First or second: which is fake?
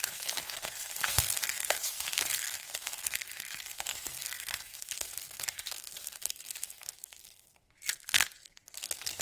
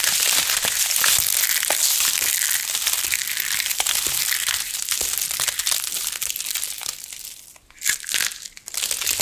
first